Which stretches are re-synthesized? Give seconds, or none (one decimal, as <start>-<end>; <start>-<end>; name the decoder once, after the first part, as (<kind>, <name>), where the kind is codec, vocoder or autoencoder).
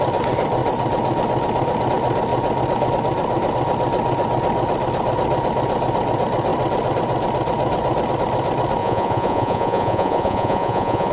8.8-11.1 (vocoder, Vocos)